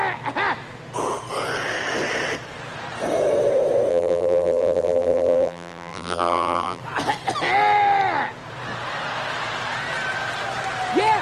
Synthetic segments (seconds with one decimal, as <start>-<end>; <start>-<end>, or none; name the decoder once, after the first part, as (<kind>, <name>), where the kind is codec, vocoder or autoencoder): 3.9-6.8 (vocoder, BigVGAN v2)